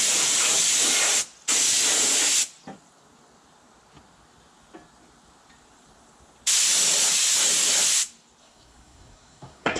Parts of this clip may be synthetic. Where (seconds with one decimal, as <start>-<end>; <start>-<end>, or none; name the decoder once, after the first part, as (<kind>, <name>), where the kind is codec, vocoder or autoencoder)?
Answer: 8.4-9.8 (codec, SNAC)